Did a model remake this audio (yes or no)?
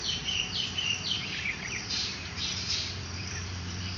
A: yes